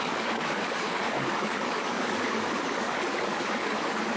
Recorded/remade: remade